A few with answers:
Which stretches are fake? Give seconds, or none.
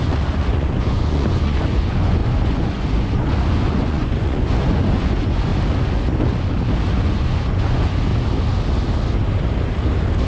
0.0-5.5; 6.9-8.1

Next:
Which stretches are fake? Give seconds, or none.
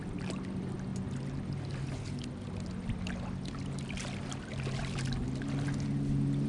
none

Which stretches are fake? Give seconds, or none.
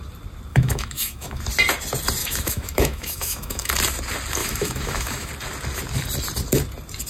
0.5-1.4; 2.2-3.7; 4.4-5.3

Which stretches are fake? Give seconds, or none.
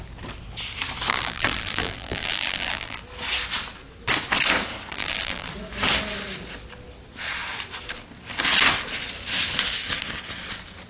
1.1-3.0; 4.9-5.5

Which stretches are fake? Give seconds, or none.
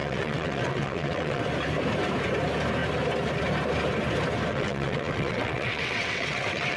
0.0-1.4; 4.5-6.8